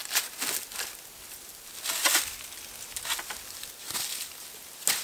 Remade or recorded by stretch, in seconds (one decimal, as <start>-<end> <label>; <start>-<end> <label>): 0.0-5.0 recorded